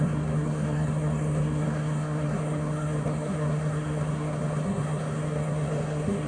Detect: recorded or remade remade